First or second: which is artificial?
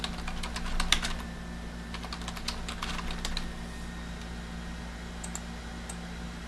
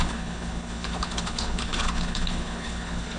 second